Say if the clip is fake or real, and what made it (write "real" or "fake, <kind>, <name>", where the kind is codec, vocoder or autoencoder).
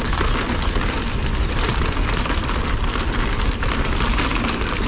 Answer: real